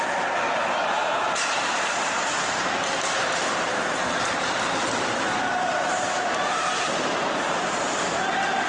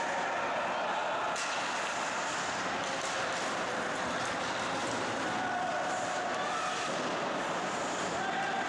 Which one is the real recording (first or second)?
second